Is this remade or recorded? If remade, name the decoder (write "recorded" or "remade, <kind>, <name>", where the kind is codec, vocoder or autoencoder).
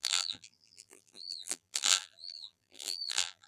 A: remade, vocoder, BigVGAN v2